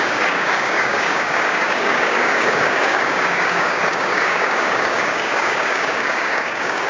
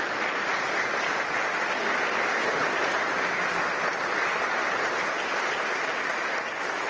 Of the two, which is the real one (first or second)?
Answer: second